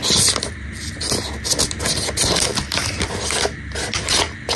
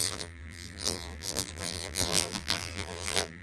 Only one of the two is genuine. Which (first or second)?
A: first